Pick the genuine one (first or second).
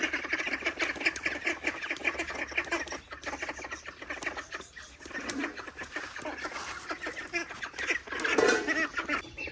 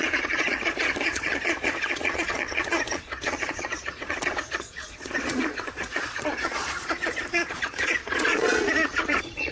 first